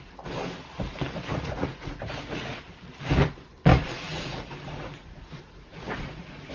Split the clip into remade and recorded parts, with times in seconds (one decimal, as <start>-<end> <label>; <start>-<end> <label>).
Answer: 0.0-1.3 recorded; 1.3-2.6 remade; 2.6-3.7 recorded; 3.7-6.5 remade